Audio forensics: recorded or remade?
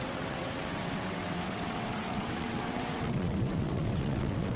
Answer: remade